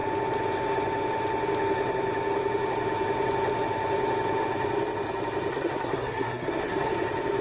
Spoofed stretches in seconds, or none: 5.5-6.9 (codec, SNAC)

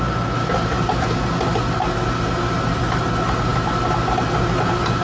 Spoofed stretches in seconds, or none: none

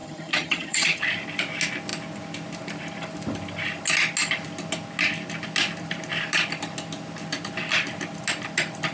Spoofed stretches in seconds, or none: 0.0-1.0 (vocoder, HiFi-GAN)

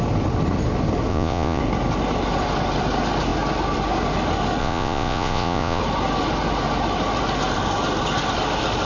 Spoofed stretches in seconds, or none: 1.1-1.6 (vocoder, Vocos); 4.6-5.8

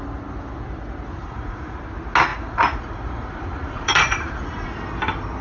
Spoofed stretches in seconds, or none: 1.2-1.8 (vocoder, Vocos); 2.3-4.8

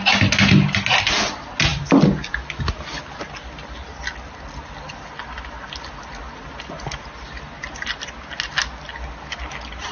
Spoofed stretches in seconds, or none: none

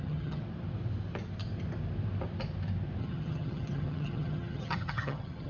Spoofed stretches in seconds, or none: 0.0-0.4 (vocoder, HiFi-GAN); 3.0-5.5

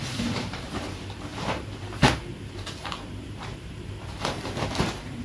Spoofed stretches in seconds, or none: 0.0-5.2 (vocoder, BigVGAN v2)